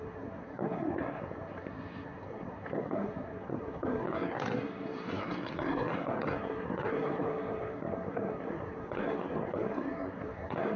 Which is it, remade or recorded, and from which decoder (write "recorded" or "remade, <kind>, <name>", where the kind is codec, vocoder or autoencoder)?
remade, codec, SNAC